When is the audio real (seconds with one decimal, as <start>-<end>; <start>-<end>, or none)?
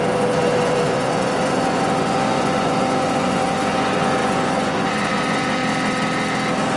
5.6-6.8